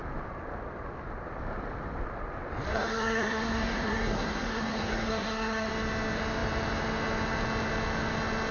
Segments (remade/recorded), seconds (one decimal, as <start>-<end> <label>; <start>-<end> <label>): 0.0-2.7 recorded; 2.7-5.7 remade; 5.7-8.5 recorded